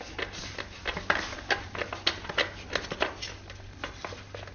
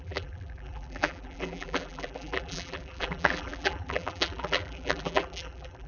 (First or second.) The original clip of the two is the first